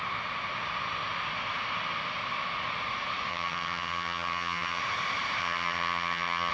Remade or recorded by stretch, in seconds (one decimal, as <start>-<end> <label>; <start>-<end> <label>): 0.0-3.3 recorded; 3.3-4.8 remade; 4.8-5.4 recorded; 5.4-6.5 remade